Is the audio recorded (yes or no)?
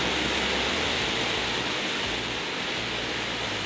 yes